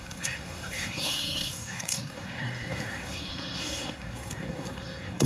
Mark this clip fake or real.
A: fake